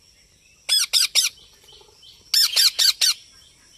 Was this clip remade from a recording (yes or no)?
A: no